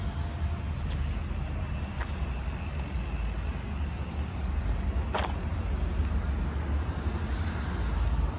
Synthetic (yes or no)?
no